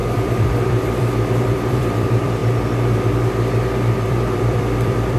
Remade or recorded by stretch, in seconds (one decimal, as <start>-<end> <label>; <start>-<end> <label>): 0.0-2.4 remade; 2.4-4.1 recorded; 4.1-5.2 remade